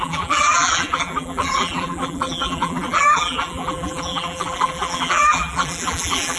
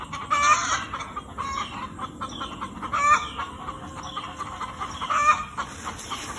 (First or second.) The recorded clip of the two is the second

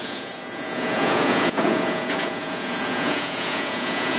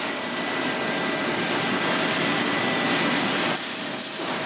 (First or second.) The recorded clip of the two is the second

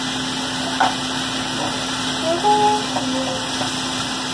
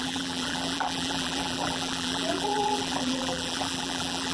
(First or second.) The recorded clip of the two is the first